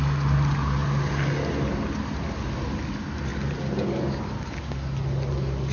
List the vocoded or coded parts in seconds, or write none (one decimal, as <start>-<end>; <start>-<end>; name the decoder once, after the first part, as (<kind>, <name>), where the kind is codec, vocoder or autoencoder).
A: none